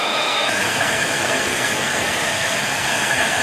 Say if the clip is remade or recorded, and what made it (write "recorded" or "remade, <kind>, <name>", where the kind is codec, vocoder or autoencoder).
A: remade, codec, SNAC